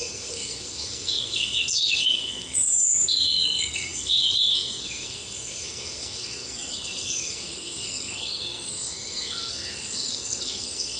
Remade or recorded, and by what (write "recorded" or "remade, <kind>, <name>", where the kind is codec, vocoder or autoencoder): remade, codec, SNAC